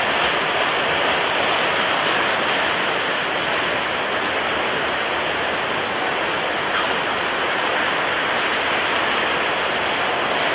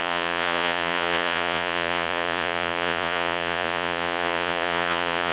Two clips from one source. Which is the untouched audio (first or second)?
first